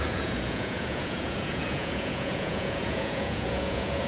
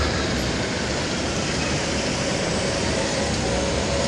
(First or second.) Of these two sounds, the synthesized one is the first